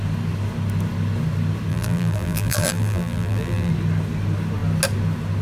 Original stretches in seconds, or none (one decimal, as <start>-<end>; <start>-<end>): 0.0-1.7; 3.7-5.4